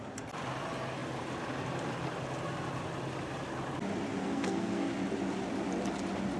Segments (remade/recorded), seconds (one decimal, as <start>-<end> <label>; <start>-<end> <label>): 0.0-4.2 recorded; 4.2-4.9 remade; 4.9-6.4 recorded